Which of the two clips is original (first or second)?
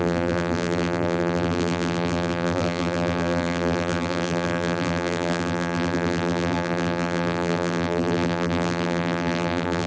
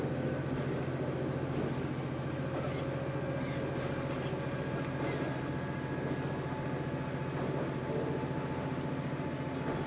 second